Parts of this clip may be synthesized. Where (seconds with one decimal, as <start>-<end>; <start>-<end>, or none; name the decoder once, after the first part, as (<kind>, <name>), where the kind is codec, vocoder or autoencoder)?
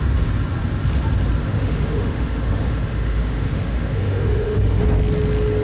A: 1.4-4.8 (autoencoder, DAC-VAE)